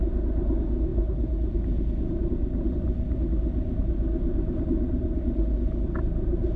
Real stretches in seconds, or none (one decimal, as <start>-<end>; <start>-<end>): 0.0-6.6